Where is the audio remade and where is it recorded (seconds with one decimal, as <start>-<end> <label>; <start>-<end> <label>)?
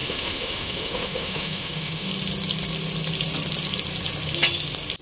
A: 0.0-2.1 remade; 2.1-5.0 recorded